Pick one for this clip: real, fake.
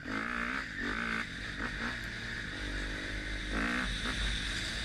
real